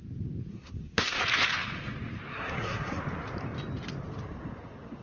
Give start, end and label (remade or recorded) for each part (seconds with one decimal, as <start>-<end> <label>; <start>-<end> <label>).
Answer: 0.0-0.5 recorded; 0.5-1.2 remade; 1.2-2.3 recorded; 2.3-3.0 remade; 3.0-5.0 recorded